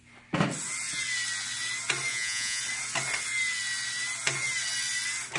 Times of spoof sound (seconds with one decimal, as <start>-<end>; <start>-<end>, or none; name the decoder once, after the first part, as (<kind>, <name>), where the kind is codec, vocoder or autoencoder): 2.1-2.6 (vocoder, Vocos)